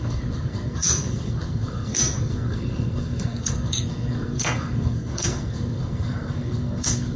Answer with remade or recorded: remade